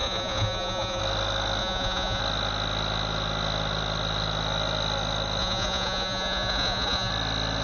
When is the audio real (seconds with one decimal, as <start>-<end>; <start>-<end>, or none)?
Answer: 1.0-1.6; 2.2-5.4; 7.1-7.6